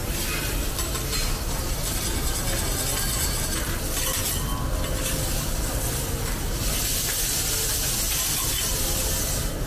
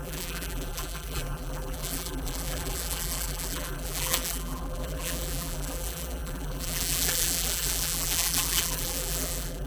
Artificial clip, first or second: second